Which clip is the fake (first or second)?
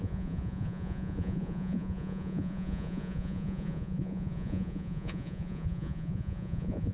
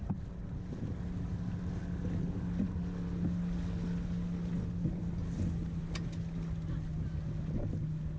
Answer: first